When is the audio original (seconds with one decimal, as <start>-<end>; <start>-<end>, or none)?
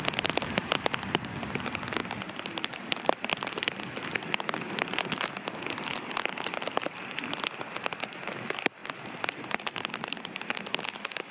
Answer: 0.0-2.0; 2.7-8.8; 10.8-11.3